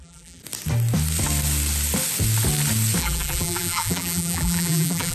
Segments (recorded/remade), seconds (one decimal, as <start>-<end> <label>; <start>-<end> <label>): 0.0-0.4 remade; 0.4-3.0 recorded; 3.0-5.1 remade